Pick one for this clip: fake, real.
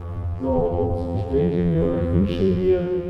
fake